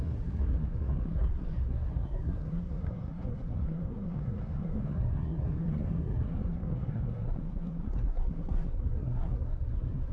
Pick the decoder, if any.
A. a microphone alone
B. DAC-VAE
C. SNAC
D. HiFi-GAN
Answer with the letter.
C